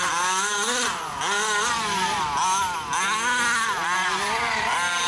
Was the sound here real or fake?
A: real